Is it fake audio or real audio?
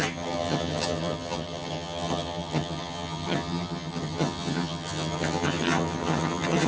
fake